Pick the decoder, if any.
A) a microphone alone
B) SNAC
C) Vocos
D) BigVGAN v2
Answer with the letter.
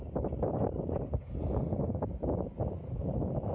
A